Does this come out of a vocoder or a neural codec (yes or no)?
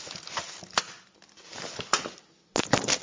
no